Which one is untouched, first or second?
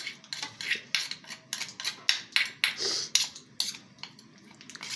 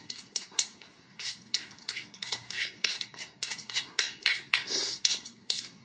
first